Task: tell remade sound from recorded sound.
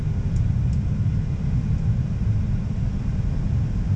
recorded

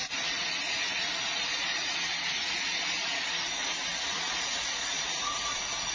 remade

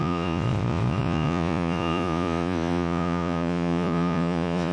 remade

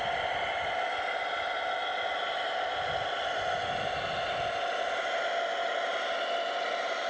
recorded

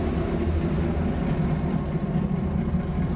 recorded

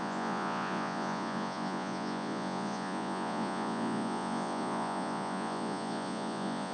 remade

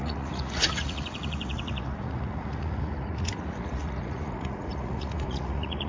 remade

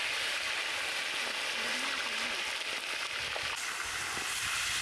recorded